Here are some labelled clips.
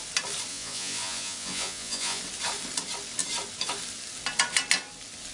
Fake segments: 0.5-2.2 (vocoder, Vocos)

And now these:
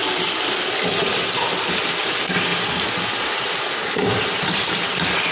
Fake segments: 2.5-5.3 (vocoder, BigVGAN v2)

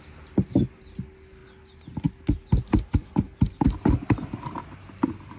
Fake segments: none

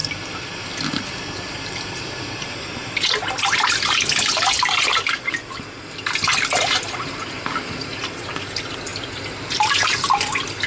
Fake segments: 0.0-3.1 (vocoder, BigVGAN v2); 8.9-10.1

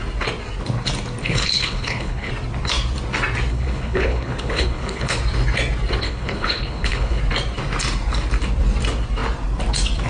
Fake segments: 1.2-2.3 (codec, HILCodec); 3.5-5.2; 6.0-7.2

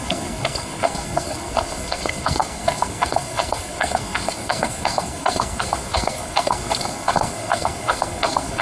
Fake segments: 0.0-8.6 (codec, SNAC)

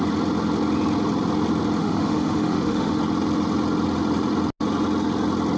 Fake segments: 1.8-3.0 (autoencoder, DAC-VAE)

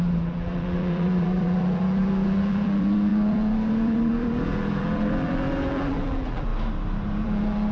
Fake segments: 0.0-6.5 (vocoder, BigVGAN v2); 7.2-7.7